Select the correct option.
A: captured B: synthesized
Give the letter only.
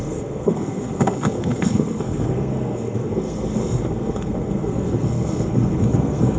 B